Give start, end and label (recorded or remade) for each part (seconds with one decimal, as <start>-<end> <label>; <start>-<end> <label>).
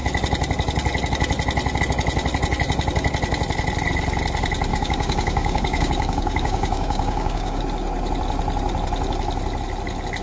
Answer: 0.0-4.7 recorded; 4.7-7.6 remade; 7.6-10.2 recorded